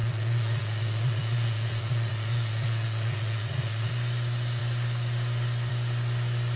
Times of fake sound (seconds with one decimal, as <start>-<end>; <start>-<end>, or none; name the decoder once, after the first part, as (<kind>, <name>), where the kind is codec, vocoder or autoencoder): 0.0-3.9 (vocoder, Vocos)